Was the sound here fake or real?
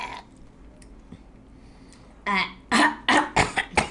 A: real